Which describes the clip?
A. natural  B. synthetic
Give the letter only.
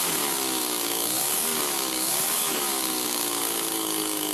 B